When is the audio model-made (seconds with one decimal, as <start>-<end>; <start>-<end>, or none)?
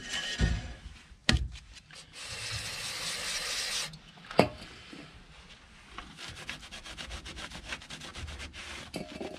1.2-1.7; 8.1-8.9